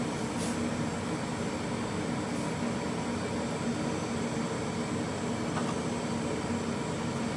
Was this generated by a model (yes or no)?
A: no